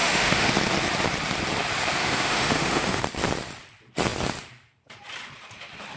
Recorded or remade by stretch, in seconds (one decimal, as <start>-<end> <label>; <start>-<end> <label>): 0.0-0.5 remade; 0.5-2.0 recorded; 2.0-3.0 remade; 3.0-6.0 recorded